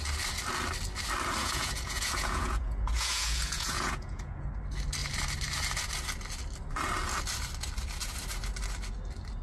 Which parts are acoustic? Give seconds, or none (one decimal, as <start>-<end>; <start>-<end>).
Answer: 0.0-1.4; 4.5-9.4